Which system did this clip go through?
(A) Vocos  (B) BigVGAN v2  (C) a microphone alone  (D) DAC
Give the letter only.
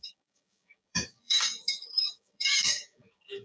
D